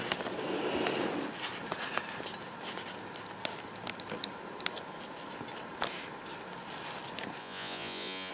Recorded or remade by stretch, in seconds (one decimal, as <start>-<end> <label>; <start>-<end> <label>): 0.0-7.4 recorded; 7.4-8.3 remade

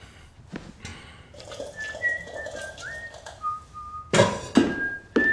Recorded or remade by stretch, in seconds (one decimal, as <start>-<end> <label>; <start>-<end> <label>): 0.0-5.3 recorded

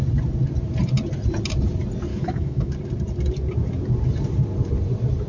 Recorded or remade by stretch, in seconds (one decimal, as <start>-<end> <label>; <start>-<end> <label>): 0.0-2.1 recorded; 2.1-2.7 remade; 2.7-5.3 recorded

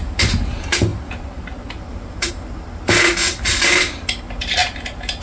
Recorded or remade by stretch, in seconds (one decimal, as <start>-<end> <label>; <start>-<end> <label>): 0.0-5.2 recorded